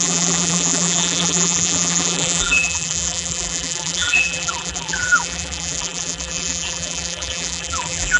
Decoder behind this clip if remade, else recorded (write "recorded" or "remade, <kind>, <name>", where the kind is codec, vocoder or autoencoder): remade, vocoder, BigVGAN v2